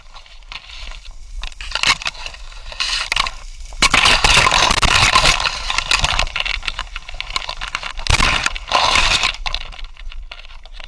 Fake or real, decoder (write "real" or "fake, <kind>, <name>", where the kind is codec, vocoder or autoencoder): real